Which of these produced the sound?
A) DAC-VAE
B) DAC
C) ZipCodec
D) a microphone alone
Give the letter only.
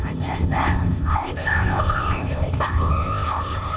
C